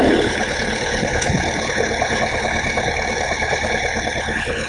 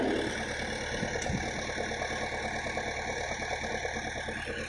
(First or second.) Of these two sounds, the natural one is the second